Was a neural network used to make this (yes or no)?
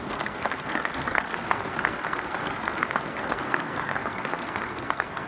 yes